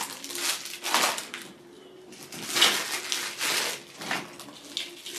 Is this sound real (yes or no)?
yes